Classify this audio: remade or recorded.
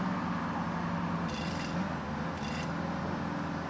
recorded